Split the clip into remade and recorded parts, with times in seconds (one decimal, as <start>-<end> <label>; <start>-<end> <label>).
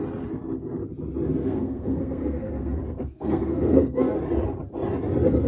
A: 0.0-1.4 recorded; 1.4-4.2 remade; 4.2-5.5 recorded